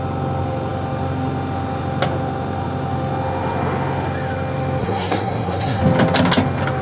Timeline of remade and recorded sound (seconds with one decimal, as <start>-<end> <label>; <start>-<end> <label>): 0.0-4.8 recorded; 4.8-5.8 remade; 5.8-6.8 recorded